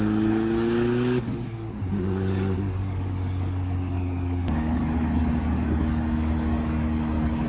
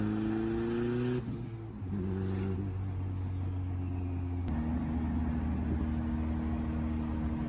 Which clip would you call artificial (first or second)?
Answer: first